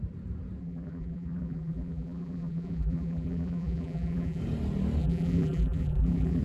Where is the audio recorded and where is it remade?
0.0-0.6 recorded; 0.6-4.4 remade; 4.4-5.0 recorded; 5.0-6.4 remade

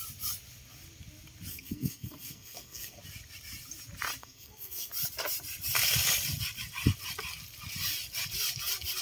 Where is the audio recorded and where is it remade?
0.0-1.5 recorded; 1.5-3.0 remade; 3.0-4.2 recorded; 4.2-4.9 remade; 4.9-9.0 recorded

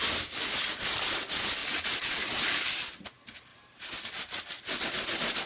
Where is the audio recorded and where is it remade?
0.0-1.6 recorded; 1.6-3.1 remade; 3.1-3.5 recorded; 3.5-4.4 remade; 4.4-5.5 recorded

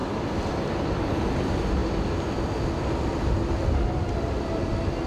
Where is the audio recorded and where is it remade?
0.0-5.1 recorded